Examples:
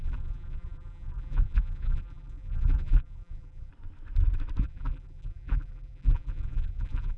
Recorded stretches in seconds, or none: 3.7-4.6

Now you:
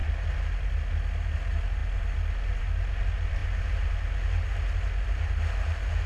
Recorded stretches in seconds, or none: 0.0-6.1

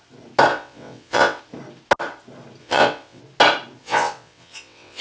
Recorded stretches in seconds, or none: 0.0-0.5; 1.4-2.6; 3.2-3.8

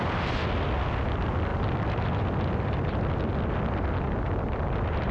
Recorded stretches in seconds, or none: 0.0-5.1

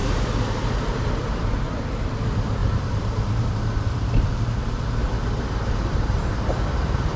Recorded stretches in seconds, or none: 5.0-5.7

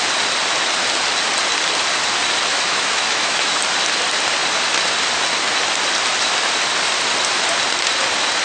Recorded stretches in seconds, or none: 0.0-2.5; 3.6-8.4